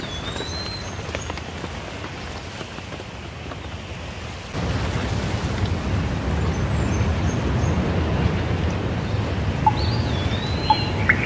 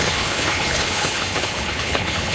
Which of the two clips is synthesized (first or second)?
second